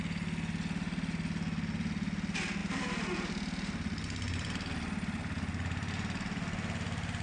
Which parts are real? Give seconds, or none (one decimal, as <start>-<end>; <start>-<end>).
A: 0.0-7.2